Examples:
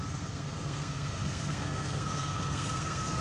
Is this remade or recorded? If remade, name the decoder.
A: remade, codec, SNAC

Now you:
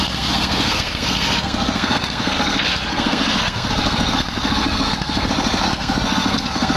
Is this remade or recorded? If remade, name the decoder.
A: remade, codec, SNAC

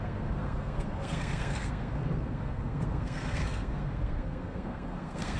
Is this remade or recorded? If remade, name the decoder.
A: remade, codec, SNAC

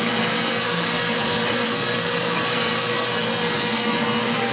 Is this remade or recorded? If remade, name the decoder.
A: remade, codec, SNAC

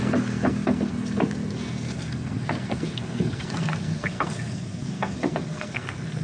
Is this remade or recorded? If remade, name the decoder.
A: remade, codec, SNAC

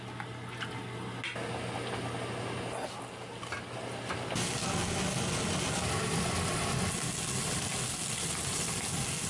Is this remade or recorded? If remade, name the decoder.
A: recorded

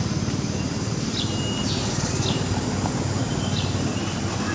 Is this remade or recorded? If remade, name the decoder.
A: recorded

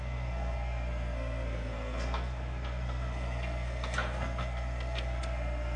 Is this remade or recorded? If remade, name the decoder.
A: remade, codec, SNAC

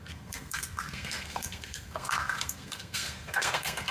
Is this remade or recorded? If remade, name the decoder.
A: remade, codec, SNAC